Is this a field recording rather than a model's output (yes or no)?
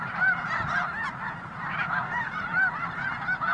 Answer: no